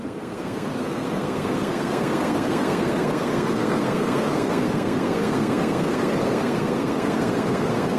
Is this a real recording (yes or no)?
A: no